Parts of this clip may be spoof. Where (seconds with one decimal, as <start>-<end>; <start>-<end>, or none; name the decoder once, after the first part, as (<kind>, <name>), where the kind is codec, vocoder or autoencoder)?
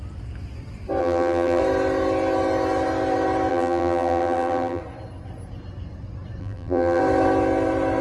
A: 1.0-1.6 (vocoder, BigVGAN v2); 3.5-4.8; 6.4-7.0